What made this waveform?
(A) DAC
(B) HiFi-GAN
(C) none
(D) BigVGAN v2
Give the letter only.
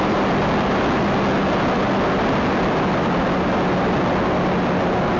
C